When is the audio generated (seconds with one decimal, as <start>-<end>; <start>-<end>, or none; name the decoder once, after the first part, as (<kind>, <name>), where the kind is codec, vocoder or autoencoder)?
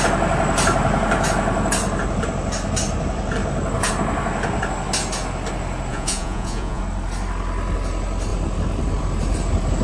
5.9-6.8 (vocoder, Vocos)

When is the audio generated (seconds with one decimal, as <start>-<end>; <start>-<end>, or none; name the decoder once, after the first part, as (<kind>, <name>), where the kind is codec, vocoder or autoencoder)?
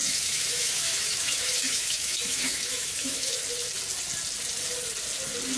0.0-3.4 (autoencoder, DAC-VAE)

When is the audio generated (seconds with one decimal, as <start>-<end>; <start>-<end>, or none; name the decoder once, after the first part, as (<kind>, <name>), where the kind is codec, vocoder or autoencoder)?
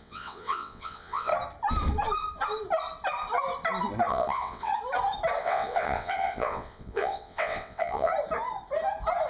0.0-1.3 (vocoder, WaveNeXt); 4.1-4.7; 5.4-8.1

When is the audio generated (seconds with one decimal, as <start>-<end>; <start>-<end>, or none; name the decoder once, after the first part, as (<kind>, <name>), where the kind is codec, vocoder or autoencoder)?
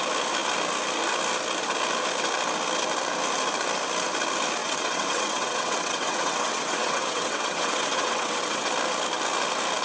4.6-8.7 (vocoder, WaveNeXt)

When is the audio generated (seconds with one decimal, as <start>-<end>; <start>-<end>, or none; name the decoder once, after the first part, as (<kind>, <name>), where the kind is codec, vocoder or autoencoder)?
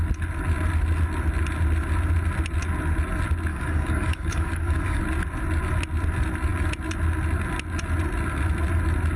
3.5-5.0 (codec, DAC)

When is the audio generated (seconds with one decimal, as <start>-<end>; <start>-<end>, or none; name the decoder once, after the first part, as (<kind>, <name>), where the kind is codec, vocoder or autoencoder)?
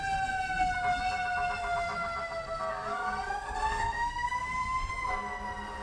2.7-4.9 (codec, SNAC)